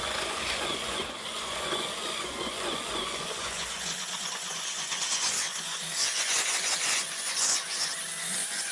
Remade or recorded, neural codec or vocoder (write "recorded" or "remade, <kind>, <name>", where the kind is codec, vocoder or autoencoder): remade, vocoder, Vocos